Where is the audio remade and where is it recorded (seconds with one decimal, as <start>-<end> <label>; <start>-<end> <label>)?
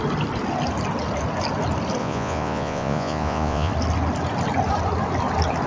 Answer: 0.0-2.0 recorded; 2.0-3.7 remade; 3.7-5.7 recorded